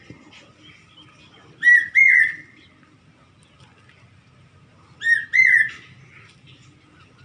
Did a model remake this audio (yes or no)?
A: no